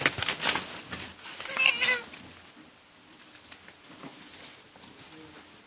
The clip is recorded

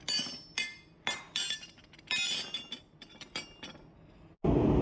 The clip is recorded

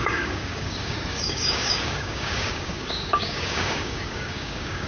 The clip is remade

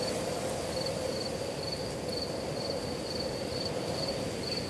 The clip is recorded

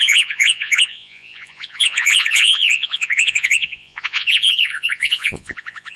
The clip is remade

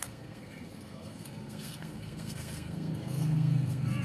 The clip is remade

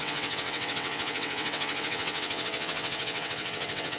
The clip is remade